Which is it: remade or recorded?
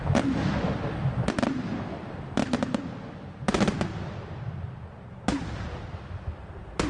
recorded